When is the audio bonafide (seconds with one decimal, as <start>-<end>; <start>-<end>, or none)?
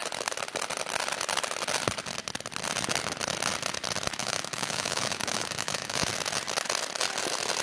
0.0-4.2; 6.1-7.6